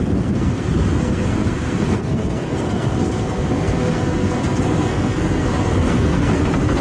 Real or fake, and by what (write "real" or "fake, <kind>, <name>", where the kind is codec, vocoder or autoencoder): fake, codec, SNAC